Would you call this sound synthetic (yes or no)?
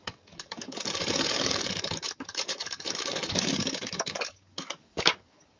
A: yes